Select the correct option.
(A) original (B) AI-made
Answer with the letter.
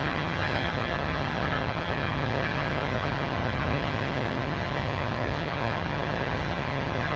B